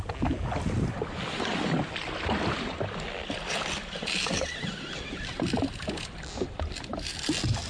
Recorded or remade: recorded